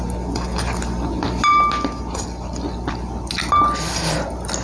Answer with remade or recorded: recorded